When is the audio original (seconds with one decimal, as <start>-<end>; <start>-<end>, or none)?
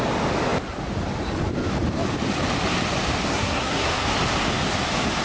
0.0-3.3; 3.9-5.2